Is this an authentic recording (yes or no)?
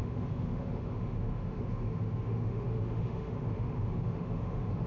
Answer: no